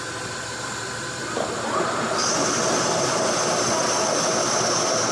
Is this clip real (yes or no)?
yes